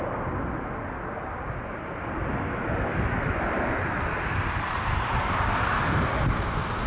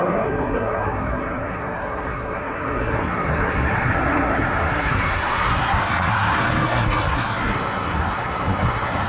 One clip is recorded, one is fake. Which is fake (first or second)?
second